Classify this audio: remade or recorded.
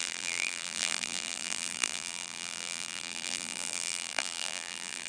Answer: remade